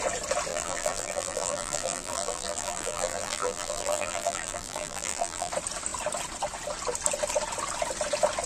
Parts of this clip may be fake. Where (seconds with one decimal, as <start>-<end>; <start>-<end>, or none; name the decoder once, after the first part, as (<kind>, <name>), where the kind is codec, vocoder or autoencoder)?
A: 0.5-5.5 (vocoder, BigVGAN v2)